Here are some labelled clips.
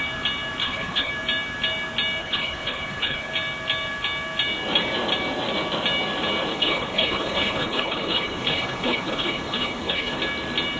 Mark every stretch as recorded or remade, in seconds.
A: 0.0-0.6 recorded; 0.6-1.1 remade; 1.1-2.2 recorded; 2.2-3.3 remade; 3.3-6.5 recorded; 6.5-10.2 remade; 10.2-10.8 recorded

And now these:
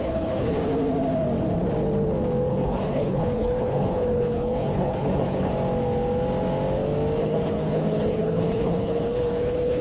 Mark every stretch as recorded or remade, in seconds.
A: 0.0-0.6 remade; 0.6-2.5 recorded; 2.5-5.5 remade; 5.5-7.2 recorded; 7.2-9.8 remade